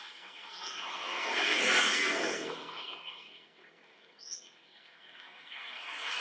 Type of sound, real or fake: fake